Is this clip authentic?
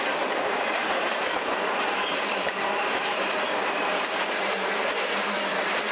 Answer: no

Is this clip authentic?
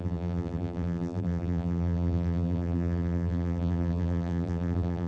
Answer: no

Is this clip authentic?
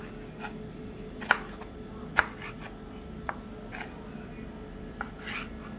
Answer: yes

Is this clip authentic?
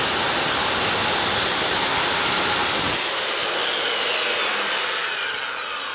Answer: yes